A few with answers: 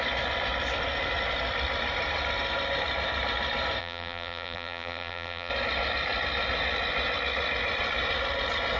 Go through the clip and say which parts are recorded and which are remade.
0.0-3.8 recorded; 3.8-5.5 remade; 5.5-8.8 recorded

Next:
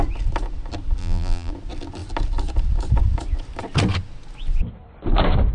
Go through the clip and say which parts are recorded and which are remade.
0.0-1.0 recorded; 1.0-1.5 remade; 1.5-5.5 recorded

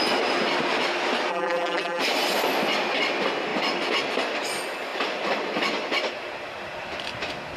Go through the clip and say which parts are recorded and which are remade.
0.0-1.3 recorded; 1.3-2.0 remade; 2.0-7.6 recorded

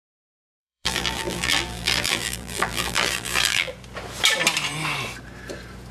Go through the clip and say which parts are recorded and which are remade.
0.0-0.4 recorded; 0.4-3.7 remade; 3.7-5.9 recorded